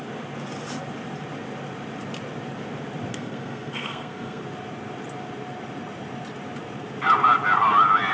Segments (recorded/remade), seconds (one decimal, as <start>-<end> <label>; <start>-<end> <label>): 0.0-3.1 recorded; 3.1-4.4 remade; 4.4-8.1 recorded